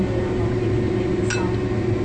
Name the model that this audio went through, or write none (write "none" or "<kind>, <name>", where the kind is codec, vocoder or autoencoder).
none